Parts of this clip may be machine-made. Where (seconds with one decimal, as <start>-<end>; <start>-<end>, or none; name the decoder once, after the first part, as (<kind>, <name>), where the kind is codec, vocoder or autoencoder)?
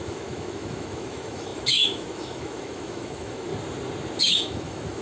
0.0-3.5 (autoencoder, DAC-VAE); 4.2-5.0